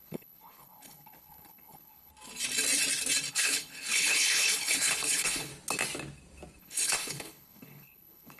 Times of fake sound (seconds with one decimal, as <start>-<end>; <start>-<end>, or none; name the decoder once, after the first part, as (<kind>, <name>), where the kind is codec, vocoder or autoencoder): 0.0-2.1 (codec, HILCodec); 3.3-5.5; 6.6-8.4